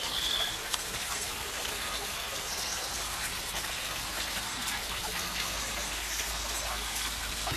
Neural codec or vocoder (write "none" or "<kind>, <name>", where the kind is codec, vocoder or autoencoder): codec, SNAC